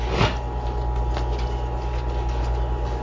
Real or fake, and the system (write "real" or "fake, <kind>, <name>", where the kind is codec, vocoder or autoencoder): real